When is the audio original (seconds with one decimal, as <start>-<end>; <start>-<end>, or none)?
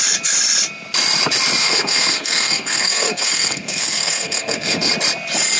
0.0-1.6; 4.9-5.6